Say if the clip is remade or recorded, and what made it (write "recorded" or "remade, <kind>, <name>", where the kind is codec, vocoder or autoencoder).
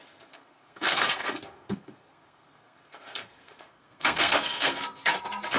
remade, codec, SNAC